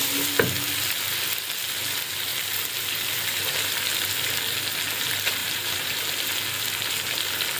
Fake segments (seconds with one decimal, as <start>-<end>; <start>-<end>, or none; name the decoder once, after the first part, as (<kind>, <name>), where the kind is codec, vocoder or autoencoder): 5.4-6.1 (vocoder, BigVGAN v2)